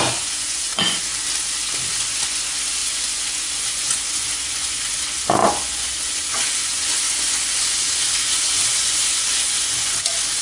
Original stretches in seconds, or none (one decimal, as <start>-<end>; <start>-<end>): 1.1-1.9

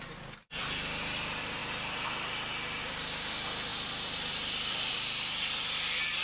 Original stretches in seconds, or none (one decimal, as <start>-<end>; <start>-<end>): 1.6-2.8

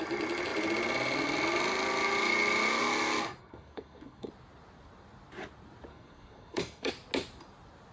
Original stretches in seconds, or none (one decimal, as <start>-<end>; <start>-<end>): 0.0-3.4; 4.3-5.9; 6.9-7.9